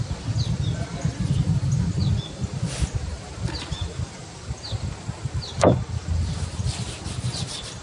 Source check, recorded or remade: recorded